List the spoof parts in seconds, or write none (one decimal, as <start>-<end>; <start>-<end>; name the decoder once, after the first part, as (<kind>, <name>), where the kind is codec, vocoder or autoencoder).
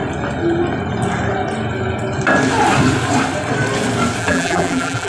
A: 4.2-5.1 (vocoder, BigVGAN v2)